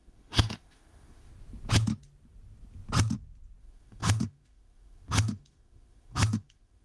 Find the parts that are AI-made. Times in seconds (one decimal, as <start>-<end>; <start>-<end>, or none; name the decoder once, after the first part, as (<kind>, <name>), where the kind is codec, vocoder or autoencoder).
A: 0.0-1.3 (autoencoder, DAC-VAE); 3.6-6.8